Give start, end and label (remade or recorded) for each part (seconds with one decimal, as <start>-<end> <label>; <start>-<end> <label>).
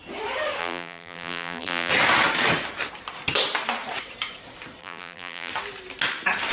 0.0-0.6 recorded; 0.6-1.9 remade; 1.9-4.8 recorded; 4.8-5.5 remade; 5.5-6.5 recorded